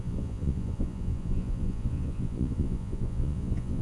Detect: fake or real fake